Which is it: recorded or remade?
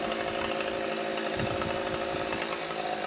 recorded